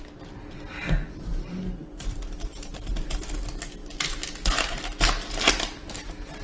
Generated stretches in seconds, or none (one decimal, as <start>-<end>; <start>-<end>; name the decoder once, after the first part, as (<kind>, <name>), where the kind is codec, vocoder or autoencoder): 1.3-2.7 (vocoder, BigVGAN v2)